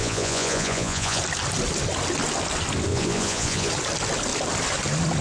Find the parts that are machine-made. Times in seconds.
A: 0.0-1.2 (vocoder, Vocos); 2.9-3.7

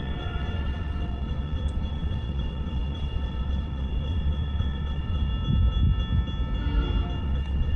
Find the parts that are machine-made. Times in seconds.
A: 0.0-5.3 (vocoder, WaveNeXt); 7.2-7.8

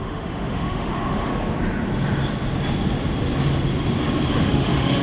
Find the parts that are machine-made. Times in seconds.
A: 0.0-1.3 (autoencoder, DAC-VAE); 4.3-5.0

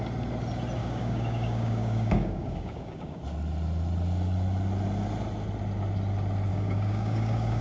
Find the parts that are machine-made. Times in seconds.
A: 0.8-3.2 (codec, DAC); 6.5-7.6

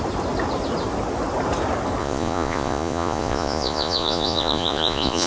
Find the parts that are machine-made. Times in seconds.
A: 2.0-5.3 (vocoder, Vocos)